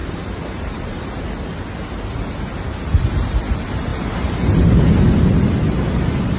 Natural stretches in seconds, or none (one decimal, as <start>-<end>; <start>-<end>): 1.1-6.4